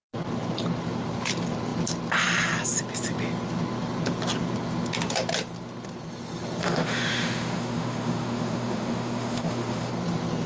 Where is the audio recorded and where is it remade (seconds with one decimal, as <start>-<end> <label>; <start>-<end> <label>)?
0.0-6.6 recorded; 6.6-9.9 remade; 9.9-10.5 recorded

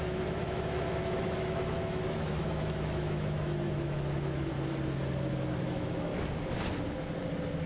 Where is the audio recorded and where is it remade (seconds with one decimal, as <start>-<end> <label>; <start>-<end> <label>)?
0.0-4.5 remade; 4.5-5.6 recorded; 5.6-6.1 remade; 6.1-7.7 recorded

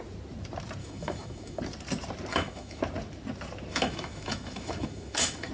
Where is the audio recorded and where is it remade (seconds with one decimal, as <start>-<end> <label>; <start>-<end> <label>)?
0.0-0.8 recorded; 0.8-1.6 remade; 1.6-2.3 recorded; 2.3-2.8 remade; 2.8-3.7 recorded; 3.7-5.5 remade

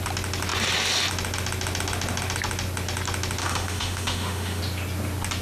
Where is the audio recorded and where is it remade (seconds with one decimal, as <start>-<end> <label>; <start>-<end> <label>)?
0.0-3.4 recorded; 3.4-4.6 remade; 4.6-5.4 recorded